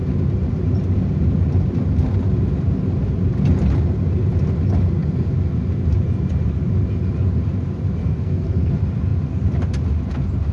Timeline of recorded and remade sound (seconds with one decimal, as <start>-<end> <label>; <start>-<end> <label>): 0.0-8.0 recorded; 8.0-8.7 remade; 8.7-10.5 recorded